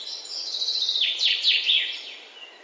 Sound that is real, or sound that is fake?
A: real